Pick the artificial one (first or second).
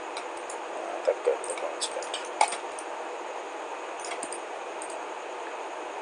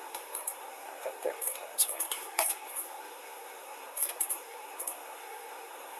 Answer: second